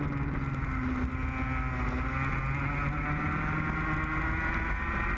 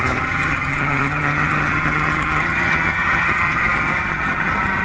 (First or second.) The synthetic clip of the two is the second